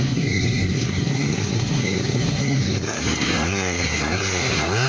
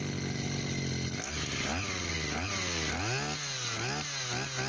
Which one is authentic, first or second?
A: second